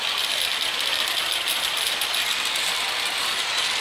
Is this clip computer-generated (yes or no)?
no